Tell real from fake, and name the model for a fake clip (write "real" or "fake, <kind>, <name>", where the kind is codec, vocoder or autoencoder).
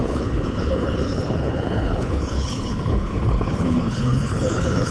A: fake, codec, HILCodec